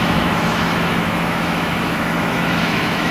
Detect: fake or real fake